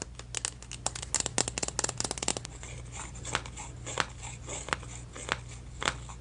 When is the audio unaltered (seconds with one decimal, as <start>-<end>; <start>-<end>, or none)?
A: 0.0-6.2